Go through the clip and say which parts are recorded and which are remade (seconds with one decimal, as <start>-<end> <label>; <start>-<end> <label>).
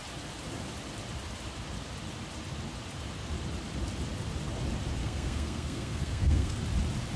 0.0-5.0 recorded; 5.0-6.6 remade; 6.6-7.2 recorded